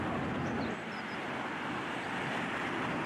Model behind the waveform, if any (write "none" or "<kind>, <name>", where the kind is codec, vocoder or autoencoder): none